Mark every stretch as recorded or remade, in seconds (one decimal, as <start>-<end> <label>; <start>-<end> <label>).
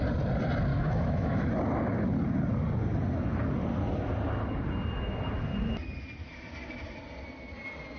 0.0-0.7 recorded; 0.7-1.5 remade; 1.5-8.0 recorded